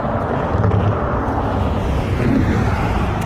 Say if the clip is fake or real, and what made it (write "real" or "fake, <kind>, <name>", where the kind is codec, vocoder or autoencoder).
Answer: real